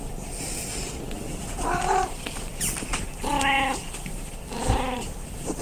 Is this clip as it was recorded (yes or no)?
no